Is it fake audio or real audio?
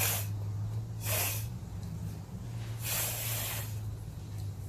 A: real